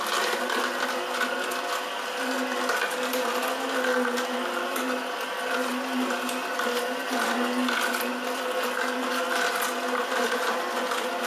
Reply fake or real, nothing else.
real